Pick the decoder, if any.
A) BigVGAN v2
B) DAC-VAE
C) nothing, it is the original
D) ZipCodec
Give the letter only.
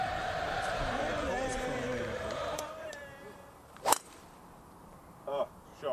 A